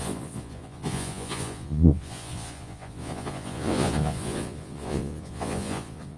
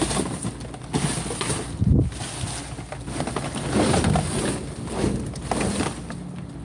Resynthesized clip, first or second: first